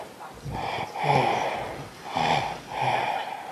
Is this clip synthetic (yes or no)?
no